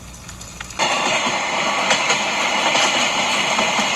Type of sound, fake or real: real